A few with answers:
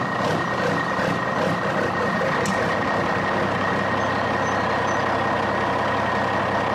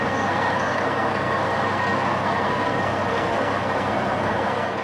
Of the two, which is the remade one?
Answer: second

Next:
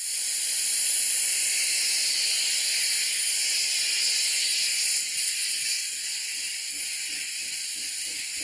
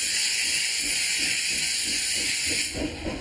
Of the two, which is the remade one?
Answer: second